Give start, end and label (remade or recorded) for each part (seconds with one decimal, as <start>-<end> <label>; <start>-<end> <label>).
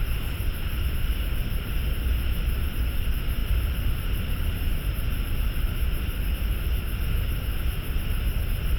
0.0-3.4 recorded; 3.4-6.8 remade; 6.8-8.8 recorded